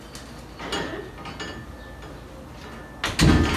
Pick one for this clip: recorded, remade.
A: recorded